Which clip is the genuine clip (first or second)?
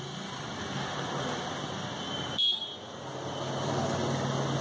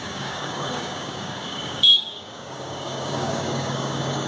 first